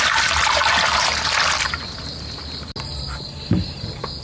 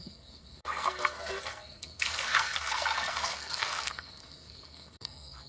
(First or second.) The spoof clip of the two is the second